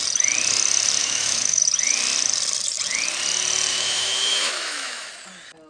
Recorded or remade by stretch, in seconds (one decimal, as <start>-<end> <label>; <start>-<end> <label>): 0.0-1.0 recorded; 1.0-1.6 remade; 1.6-3.7 recorded; 3.7-5.1 remade; 5.1-5.7 recorded